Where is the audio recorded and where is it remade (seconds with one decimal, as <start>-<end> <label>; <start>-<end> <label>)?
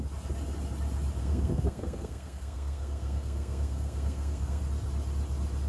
0.0-1.2 recorded; 1.2-4.6 remade; 4.6-5.7 recorded